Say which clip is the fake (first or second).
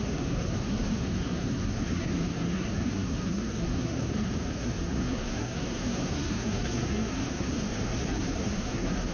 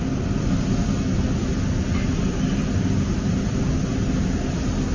first